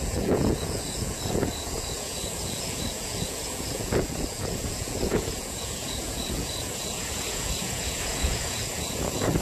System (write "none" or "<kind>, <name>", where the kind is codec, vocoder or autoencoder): vocoder, Vocos